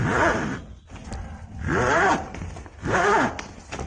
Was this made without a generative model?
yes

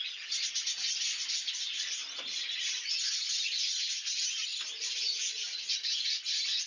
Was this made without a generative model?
yes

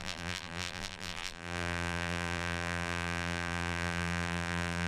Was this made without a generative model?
no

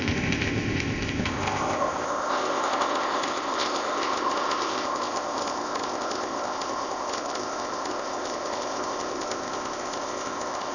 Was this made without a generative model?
no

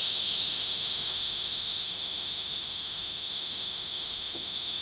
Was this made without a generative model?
no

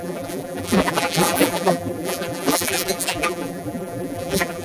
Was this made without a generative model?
no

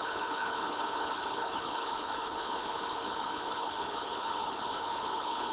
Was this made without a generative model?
no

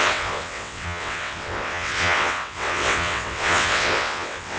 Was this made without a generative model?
no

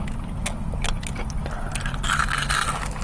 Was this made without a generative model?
yes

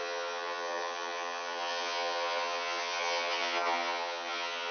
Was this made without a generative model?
no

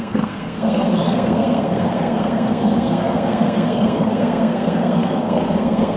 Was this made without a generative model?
no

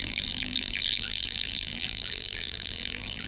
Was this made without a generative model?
no